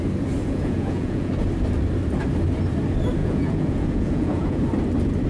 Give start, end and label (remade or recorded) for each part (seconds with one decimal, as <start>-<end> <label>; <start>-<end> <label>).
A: 0.0-0.4 recorded; 0.4-1.3 remade; 1.3-3.2 recorded; 3.2-4.6 remade; 4.6-5.3 recorded